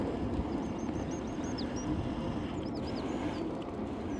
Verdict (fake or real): real